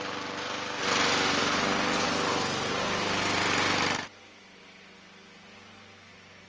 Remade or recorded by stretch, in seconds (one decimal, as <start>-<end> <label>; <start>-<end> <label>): 0.0-6.5 recorded